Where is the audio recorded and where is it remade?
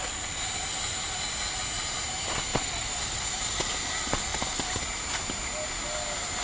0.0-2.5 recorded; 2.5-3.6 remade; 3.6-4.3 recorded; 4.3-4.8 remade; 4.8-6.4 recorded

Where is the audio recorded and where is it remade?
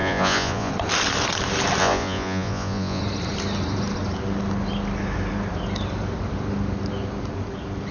0.0-0.7 remade; 0.7-1.8 recorded; 1.8-3.0 remade; 3.0-7.9 recorded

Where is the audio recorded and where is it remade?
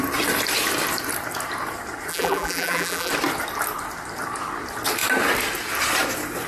0.0-2.1 recorded; 2.1-3.1 remade; 3.1-6.5 recorded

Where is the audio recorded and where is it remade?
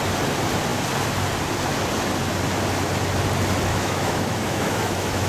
0.0-3.7 recorded; 3.7-5.3 remade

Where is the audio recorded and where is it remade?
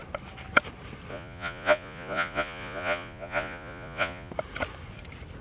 0.0-1.1 recorded; 1.1-4.3 remade; 4.3-5.4 recorded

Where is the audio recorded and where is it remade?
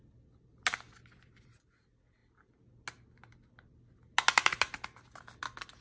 0.0-5.8 recorded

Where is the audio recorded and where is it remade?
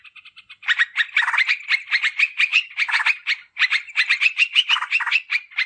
0.0-5.7 recorded